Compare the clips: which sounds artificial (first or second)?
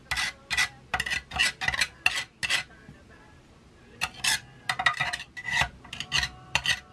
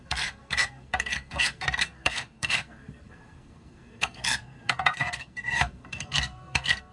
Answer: second